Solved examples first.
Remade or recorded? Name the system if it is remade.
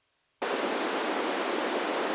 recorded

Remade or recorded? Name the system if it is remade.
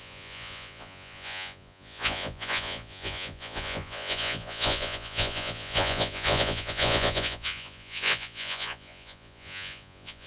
remade, vocoder, Vocos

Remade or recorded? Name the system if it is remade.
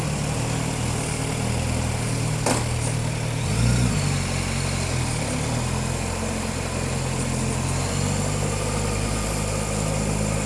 recorded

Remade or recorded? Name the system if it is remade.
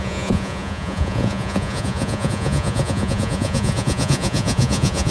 remade, vocoder, Vocos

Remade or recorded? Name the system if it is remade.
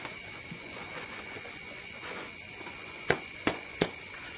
remade, vocoder, Vocos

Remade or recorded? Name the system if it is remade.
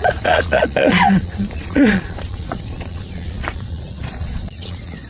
remade, vocoder, Vocos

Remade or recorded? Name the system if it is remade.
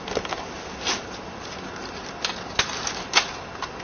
recorded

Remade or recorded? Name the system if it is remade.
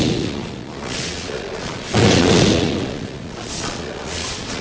remade, vocoder, Vocos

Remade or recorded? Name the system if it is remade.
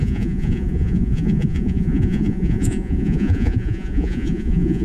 remade, vocoder, Vocos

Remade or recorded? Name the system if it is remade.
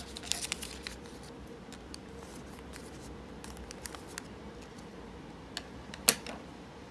recorded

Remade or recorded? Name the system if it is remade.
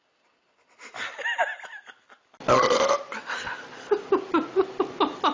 recorded